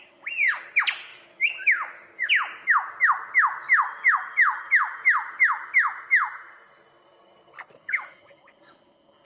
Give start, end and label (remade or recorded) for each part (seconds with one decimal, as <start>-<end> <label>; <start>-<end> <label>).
0.0-1.1 recorded; 1.1-1.9 remade; 1.9-7.7 recorded; 7.7-8.3 remade; 8.3-9.2 recorded